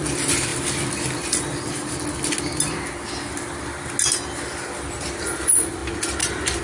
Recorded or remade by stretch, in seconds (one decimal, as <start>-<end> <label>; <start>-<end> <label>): 0.0-6.6 recorded